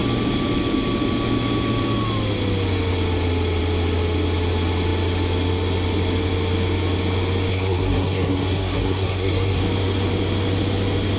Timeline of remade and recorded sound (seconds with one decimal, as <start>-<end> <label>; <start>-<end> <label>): 0.0-7.5 recorded; 7.5-9.6 remade; 9.6-11.2 recorded